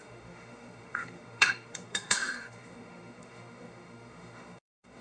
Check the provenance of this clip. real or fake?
fake